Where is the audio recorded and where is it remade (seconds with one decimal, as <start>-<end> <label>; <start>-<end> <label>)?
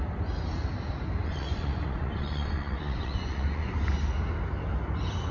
0.0-1.2 recorded; 1.2-3.7 remade; 3.7-5.3 recorded